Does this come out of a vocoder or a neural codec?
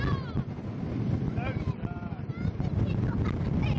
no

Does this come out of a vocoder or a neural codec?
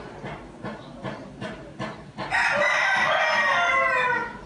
no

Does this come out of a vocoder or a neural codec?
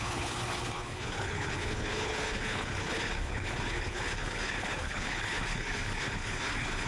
yes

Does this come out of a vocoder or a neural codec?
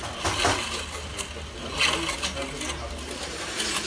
no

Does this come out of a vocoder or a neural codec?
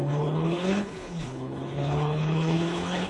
yes